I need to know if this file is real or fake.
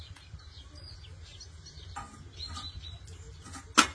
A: real